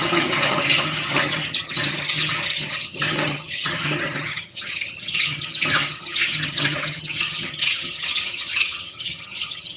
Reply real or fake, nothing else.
fake